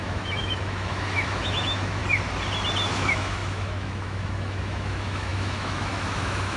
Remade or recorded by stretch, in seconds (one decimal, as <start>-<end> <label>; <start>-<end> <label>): 0.0-2.0 remade; 2.0-2.9 recorded; 2.9-6.6 remade